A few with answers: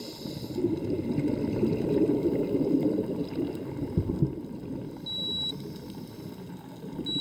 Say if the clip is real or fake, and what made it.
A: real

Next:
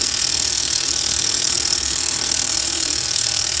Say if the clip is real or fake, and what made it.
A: fake, codec, SNAC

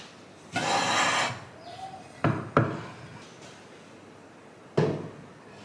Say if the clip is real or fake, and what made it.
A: real